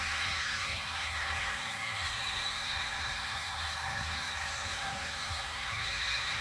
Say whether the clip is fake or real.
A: fake